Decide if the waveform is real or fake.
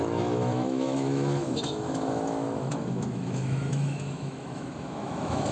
fake